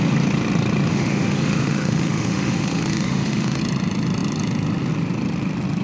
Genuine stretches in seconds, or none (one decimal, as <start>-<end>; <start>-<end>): 0.0-0.9; 3.6-5.8